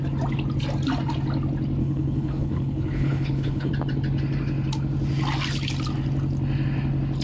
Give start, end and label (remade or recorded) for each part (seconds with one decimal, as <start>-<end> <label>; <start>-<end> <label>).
0.0-1.8 recorded; 1.8-3.7 remade; 3.7-7.2 recorded